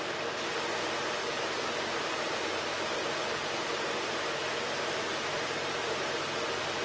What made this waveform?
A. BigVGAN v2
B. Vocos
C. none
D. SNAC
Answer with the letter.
A